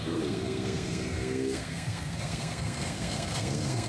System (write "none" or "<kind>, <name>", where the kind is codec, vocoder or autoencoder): codec, SNAC